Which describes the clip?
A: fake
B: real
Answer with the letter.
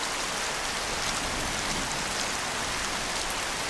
B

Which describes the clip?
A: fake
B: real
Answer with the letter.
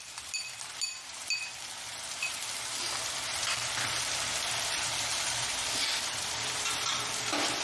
A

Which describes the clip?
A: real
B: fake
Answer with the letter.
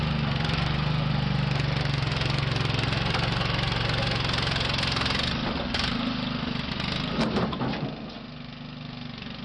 A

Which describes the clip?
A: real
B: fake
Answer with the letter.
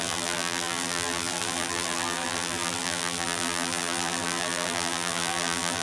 B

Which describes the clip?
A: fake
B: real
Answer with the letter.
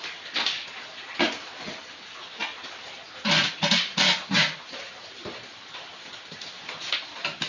B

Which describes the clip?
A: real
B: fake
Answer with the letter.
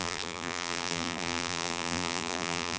B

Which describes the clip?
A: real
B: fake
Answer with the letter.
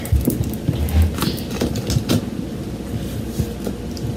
A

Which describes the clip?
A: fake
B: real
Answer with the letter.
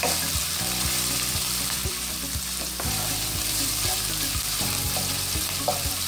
A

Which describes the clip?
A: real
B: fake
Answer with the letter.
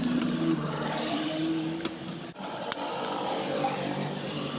B